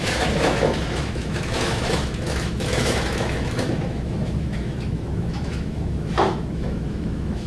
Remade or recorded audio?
remade